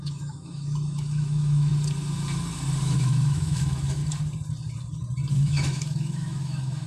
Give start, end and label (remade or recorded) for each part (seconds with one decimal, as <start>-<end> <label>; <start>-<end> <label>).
0.0-1.7 remade; 1.7-2.8 recorded; 2.8-4.0 remade; 4.0-5.3 recorded; 5.3-6.9 remade